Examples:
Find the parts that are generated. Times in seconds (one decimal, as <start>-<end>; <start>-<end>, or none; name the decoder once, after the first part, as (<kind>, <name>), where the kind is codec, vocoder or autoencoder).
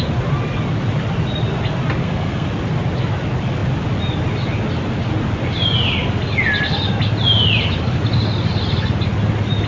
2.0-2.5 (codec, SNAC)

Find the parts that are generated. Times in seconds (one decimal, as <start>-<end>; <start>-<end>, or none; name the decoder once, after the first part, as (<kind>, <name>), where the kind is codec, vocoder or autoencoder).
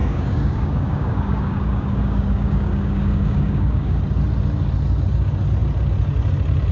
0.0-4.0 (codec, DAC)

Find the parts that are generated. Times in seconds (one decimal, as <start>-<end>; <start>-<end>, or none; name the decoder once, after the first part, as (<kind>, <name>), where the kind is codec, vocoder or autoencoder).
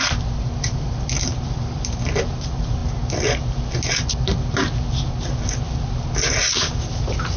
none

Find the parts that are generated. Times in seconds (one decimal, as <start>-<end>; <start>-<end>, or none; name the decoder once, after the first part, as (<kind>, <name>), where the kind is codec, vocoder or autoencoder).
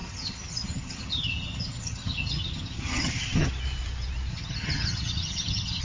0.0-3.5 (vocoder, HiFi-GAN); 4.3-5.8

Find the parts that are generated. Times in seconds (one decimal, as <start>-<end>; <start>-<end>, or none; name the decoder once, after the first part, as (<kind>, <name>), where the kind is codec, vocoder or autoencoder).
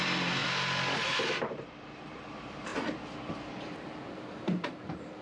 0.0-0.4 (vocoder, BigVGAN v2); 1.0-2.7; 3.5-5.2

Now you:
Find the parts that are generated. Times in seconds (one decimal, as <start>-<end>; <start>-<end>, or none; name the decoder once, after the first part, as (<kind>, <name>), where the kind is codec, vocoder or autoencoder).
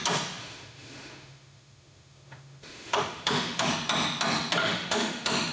0.4-3.7 (autoencoder, DAC-VAE); 4.6-5.5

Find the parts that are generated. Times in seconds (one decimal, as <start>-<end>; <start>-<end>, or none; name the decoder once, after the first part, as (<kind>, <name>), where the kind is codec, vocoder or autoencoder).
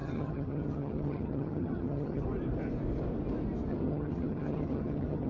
0.0-2.2 (vocoder, HiFi-GAN); 3.7-5.3